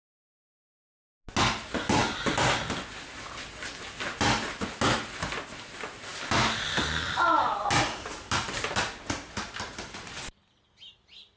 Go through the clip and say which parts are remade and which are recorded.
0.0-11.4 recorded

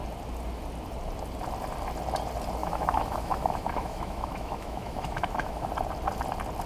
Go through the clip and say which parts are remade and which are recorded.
0.0-2.6 recorded; 2.6-5.7 remade; 5.7-6.7 recorded

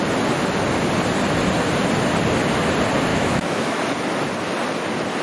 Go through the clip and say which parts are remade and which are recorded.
0.0-3.1 recorded; 3.1-3.8 remade; 3.8-5.2 recorded

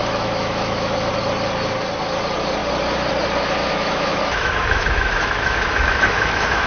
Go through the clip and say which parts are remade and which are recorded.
0.0-1.1 remade; 1.1-3.6 recorded; 3.6-6.7 remade

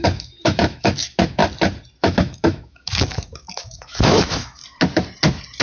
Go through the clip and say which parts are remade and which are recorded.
0.0-1.4 remade; 1.4-2.0 recorded; 2.0-4.6 remade; 4.6-5.6 recorded